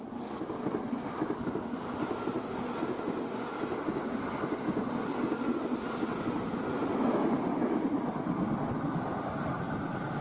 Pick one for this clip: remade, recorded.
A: recorded